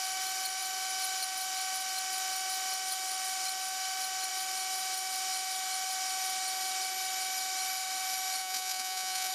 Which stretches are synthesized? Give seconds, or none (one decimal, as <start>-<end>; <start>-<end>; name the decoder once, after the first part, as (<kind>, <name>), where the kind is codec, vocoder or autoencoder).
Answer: 8.4-9.3 (vocoder, Vocos)